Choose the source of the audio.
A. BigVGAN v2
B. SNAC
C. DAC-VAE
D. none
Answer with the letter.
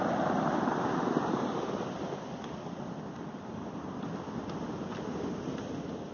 D